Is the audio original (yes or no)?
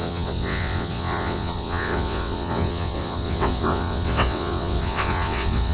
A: no